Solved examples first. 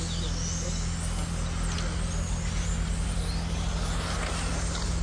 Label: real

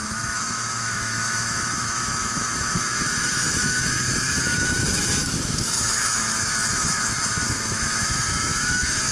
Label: fake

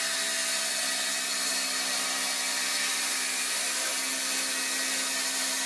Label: real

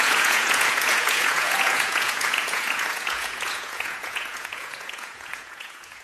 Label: fake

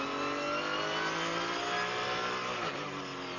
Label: real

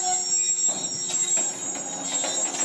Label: real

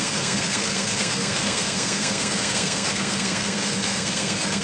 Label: fake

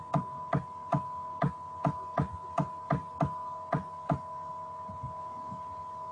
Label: real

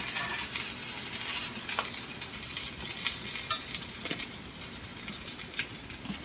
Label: real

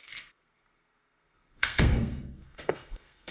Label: fake